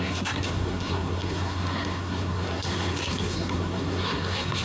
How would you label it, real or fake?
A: fake